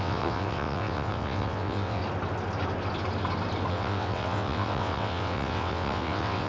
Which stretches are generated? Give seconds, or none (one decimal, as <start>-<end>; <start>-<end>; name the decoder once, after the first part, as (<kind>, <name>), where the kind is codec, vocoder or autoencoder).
0.0-2.0 (vocoder, WaveNeXt); 3.7-6.5